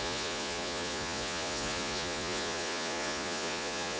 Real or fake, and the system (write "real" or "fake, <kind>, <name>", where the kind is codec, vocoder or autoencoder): fake, vocoder, Vocos